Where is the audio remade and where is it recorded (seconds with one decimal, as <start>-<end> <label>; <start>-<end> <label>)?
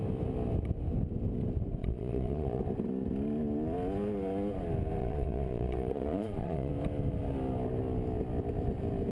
0.0-1.8 recorded; 1.8-2.6 remade; 2.6-5.0 recorded; 5.0-6.7 remade; 6.7-9.1 recorded